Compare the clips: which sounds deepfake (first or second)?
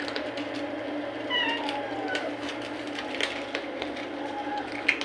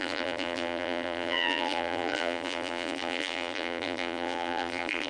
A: second